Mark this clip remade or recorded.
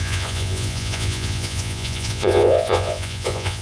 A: remade